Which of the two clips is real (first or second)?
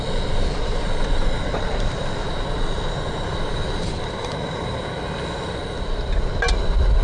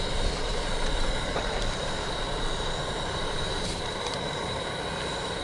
first